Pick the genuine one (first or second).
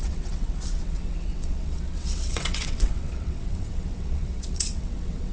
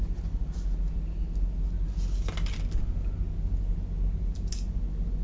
second